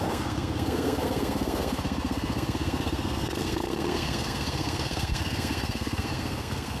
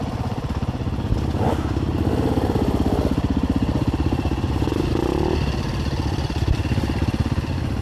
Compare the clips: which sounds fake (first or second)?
first